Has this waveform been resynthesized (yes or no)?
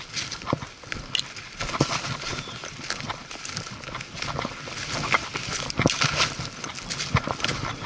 no